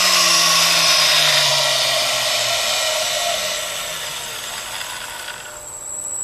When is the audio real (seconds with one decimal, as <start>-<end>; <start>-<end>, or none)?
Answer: 0.0-6.2